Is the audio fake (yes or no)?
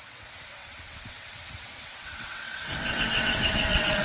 yes